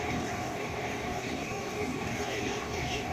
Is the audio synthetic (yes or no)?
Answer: yes